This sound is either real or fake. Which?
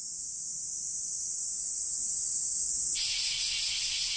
real